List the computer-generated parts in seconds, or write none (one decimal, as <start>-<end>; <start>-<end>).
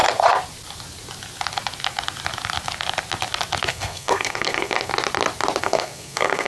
3.7-4.9; 5.6-6.5